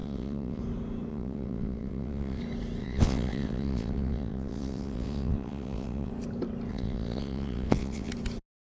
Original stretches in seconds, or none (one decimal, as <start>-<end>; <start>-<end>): 0.6-1.1; 2.4-2.8; 6.1-6.7; 8.1-8.6